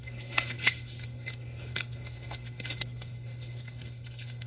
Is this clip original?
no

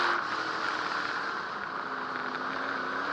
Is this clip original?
yes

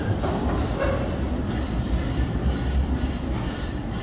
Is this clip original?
no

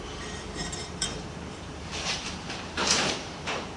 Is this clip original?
no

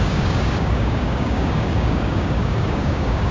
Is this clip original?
no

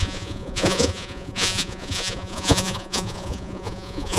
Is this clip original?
no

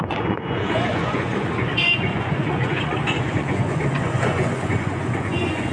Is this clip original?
no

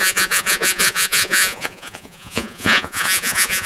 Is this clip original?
no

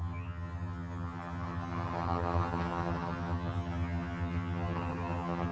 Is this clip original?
no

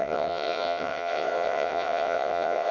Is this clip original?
no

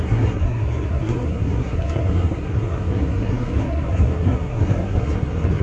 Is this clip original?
no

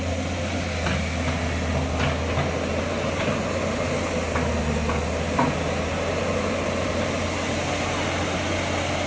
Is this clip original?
yes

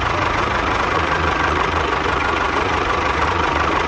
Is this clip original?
no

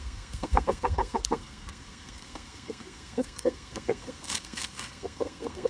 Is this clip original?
no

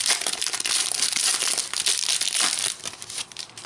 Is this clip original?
no